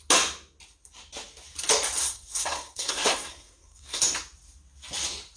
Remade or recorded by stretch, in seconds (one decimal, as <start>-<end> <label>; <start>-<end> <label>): 0.0-2.0 recorded; 2.0-4.0 remade; 4.0-5.4 recorded